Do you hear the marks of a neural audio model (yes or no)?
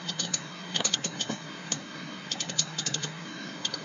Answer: yes